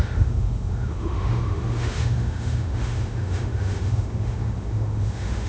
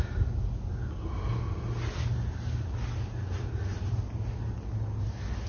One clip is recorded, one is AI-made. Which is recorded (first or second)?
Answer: second